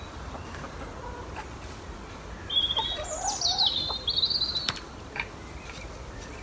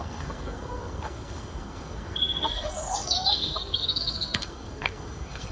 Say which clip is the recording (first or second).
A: first